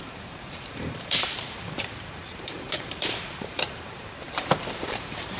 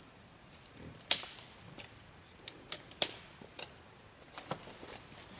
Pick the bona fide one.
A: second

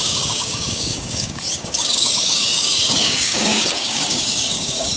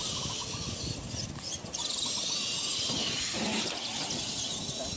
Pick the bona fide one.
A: second